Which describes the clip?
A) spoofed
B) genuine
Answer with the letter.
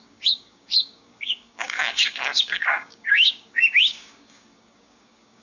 A